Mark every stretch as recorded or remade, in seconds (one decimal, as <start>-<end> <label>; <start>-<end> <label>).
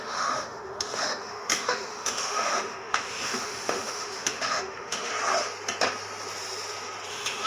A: 0.0-5.1 remade; 5.1-7.1 recorded; 7.1-7.5 remade